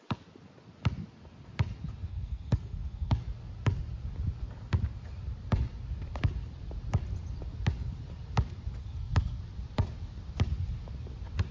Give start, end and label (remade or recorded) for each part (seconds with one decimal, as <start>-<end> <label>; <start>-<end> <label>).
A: 0.0-2.1 recorded; 2.1-3.2 remade; 3.2-8.8 recorded; 8.8-9.4 remade; 9.4-11.5 recorded